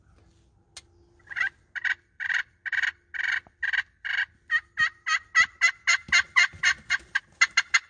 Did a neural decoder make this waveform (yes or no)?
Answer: no